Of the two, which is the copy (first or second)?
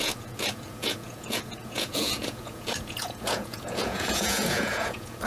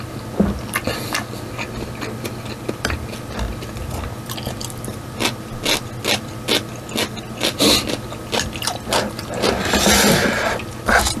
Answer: first